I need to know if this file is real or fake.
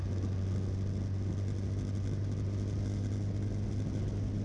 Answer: real